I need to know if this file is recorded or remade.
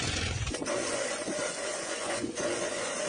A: remade